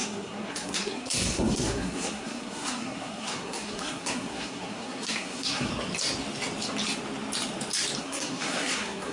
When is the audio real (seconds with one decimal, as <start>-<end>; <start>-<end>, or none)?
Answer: 5.7-8.0